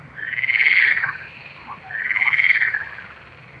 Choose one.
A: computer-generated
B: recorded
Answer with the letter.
A